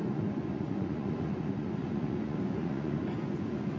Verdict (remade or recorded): remade